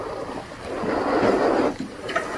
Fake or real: real